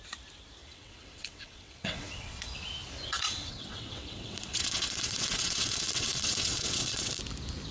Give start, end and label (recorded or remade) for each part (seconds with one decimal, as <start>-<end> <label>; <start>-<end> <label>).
0.0-0.6 recorded; 0.6-2.5 remade; 2.5-3.1 recorded; 3.1-7.1 remade; 7.1-7.7 recorded